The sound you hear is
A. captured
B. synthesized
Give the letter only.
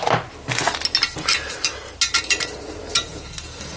A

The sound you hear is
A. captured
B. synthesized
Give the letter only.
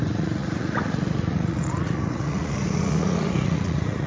B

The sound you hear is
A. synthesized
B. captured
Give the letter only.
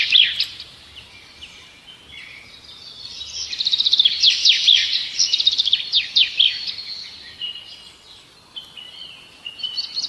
B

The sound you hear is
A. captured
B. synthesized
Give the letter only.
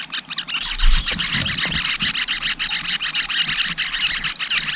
A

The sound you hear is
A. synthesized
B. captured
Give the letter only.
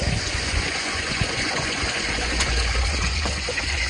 A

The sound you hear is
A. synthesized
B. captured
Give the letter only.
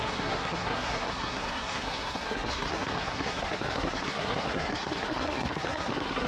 A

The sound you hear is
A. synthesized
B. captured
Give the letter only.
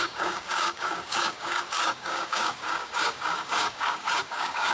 A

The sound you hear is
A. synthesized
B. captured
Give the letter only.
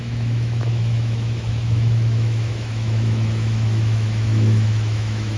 A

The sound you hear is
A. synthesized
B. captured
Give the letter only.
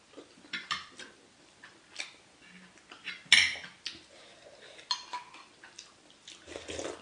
B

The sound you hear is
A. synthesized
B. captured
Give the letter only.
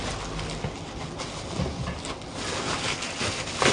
B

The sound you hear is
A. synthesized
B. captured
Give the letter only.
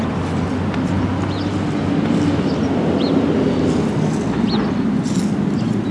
B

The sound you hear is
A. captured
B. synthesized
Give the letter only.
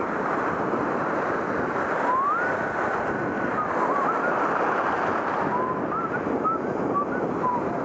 A